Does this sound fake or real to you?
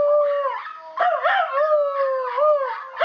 real